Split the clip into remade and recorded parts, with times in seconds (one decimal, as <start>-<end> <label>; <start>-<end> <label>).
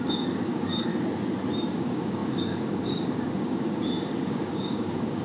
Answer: 0.0-0.9 remade; 0.9-1.7 recorded; 1.7-5.2 remade